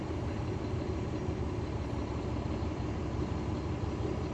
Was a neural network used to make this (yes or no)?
no